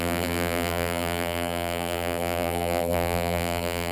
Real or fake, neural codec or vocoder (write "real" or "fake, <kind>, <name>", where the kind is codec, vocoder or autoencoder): fake, vocoder, BigVGAN v2